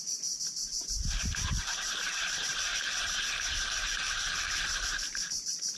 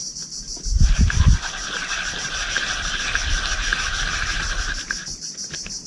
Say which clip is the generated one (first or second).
first